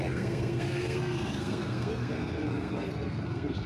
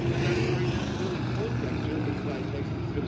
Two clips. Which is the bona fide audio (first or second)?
second